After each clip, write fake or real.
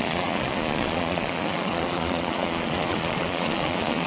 fake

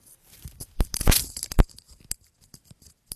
real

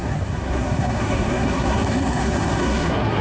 fake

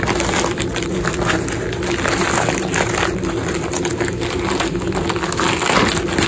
real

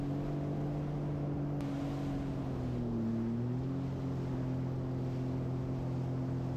real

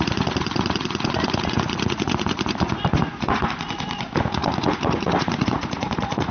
fake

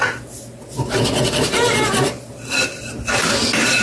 real